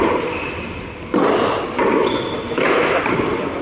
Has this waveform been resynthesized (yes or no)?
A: no